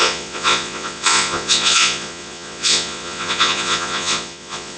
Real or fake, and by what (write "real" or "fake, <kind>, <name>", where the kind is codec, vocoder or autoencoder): fake, vocoder, Vocos